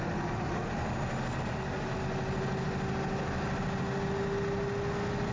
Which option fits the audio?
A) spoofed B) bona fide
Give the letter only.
B